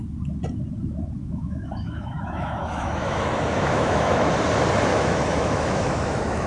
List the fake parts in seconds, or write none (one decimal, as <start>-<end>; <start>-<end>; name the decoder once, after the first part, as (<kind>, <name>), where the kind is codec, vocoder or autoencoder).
1.2-4.3 (autoencoder, DAC-VAE); 4.9-6.5